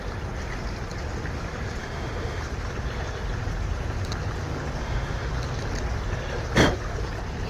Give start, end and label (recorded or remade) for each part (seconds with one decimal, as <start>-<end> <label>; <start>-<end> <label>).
0.0-1.8 recorded; 1.8-2.4 remade; 2.4-4.8 recorded; 4.8-5.3 remade; 5.3-7.5 recorded